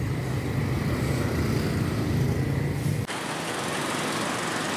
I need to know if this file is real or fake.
real